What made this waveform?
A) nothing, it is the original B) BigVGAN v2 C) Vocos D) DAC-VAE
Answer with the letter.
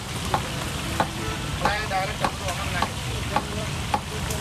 B